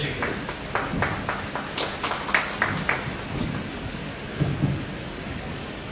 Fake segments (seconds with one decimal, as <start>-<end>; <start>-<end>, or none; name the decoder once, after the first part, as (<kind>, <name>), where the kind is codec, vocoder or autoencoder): 3.3-4.1 (codec, DAC); 5.0-5.9